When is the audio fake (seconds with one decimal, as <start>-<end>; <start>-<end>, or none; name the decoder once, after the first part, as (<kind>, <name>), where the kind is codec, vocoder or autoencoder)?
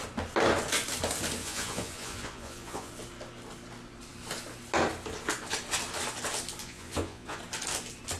1.4-2.9 (vocoder, Vocos); 6.6-7.4